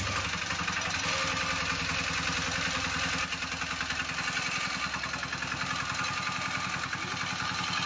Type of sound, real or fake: real